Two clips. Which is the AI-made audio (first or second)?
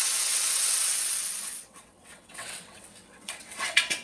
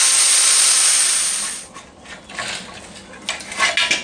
first